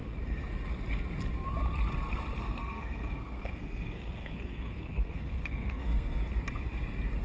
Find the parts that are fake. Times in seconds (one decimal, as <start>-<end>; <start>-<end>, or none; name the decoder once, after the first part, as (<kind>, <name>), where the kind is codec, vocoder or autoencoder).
2.4-6.2 (codec, SNAC)